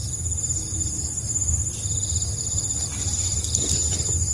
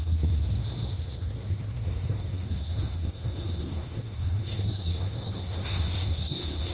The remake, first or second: second